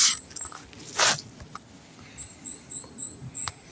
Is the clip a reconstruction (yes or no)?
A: no